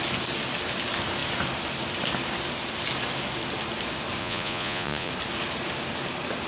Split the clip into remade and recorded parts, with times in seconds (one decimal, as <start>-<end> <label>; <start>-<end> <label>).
0.0-4.2 recorded; 4.2-5.1 remade; 5.1-6.5 recorded